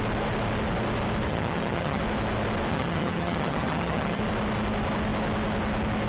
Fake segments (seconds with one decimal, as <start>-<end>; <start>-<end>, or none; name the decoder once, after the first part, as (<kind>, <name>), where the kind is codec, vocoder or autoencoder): 1.3-2.0 (vocoder, HiFi-GAN); 2.7-4.2